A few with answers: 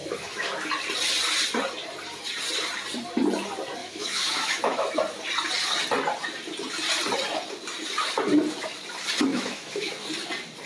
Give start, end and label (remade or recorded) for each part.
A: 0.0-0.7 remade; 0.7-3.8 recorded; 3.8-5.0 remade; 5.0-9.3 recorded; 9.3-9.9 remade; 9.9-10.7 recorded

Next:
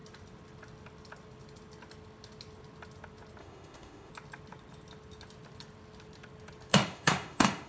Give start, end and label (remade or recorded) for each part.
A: 0.0-3.4 recorded; 3.4-4.1 remade; 4.1-6.7 recorded; 6.7-7.7 remade

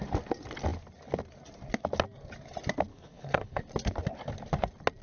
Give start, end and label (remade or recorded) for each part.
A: 0.0-2.9 recorded; 2.9-3.6 remade; 3.6-5.0 recorded

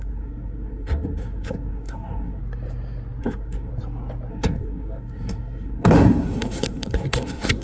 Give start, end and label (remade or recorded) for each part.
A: 0.0-2.4 remade; 2.4-3.2 recorded; 3.2-3.7 remade; 3.7-4.3 recorded; 4.3-7.6 remade

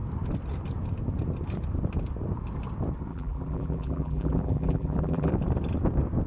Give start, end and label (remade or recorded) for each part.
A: 0.0-3.1 recorded; 3.1-5.3 remade; 5.3-6.3 recorded